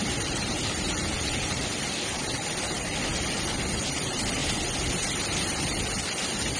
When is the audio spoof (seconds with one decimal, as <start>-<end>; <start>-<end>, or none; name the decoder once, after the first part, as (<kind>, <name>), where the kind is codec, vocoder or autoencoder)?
0.0-4.4 (vocoder, BigVGAN v2); 5.1-6.6